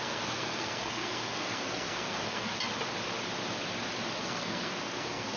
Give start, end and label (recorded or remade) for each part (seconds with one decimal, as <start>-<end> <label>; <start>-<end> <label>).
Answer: 0.0-2.5 remade; 2.5-4.2 recorded; 4.2-5.4 remade